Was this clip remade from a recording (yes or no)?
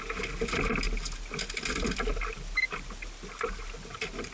no